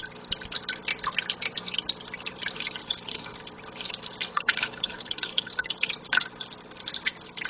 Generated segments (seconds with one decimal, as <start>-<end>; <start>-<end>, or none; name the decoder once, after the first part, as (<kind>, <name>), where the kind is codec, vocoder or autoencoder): 2.8-3.3 (codec, HILCodec); 4.3-5.9